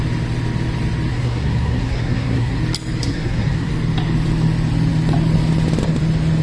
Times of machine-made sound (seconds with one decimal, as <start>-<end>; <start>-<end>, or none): 1.1-2.6; 3.0-3.7